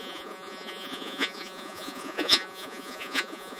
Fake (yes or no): yes